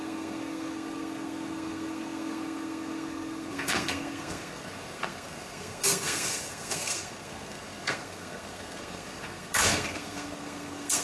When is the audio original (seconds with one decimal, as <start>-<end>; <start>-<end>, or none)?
none

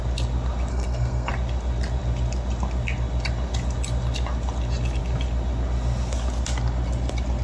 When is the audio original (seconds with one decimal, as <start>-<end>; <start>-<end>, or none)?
0.0-0.7; 1.3-7.4